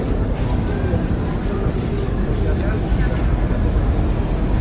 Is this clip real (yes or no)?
yes